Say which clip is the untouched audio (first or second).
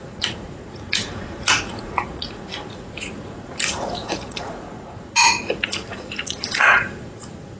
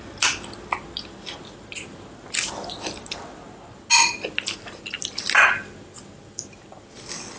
second